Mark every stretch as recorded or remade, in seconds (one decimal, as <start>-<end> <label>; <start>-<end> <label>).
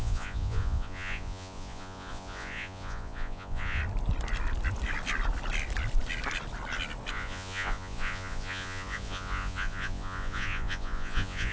0.0-3.8 remade; 3.8-7.1 recorded; 7.1-11.5 remade